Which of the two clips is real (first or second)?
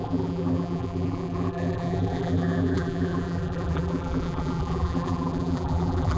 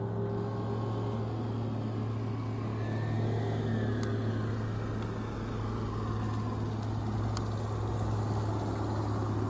second